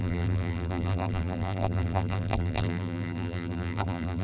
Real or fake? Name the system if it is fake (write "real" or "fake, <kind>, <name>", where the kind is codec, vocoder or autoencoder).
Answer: fake, vocoder, BigVGAN v2